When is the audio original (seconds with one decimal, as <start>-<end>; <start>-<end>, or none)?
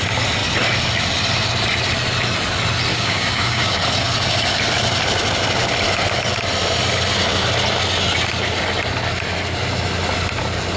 0.0-2.9; 3.7-10.8